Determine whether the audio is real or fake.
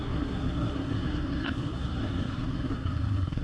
fake